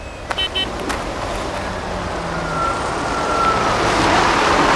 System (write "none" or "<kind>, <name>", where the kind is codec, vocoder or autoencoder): none